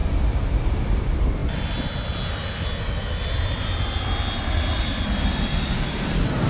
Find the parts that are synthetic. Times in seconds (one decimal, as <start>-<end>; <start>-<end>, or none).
none